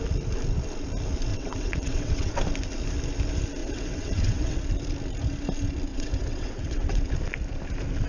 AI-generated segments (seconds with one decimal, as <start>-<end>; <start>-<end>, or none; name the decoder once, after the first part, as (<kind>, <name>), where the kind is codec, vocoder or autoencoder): 1.3-2.3 (vocoder, WaveNeXt); 3.6-4.6; 5.9-7.1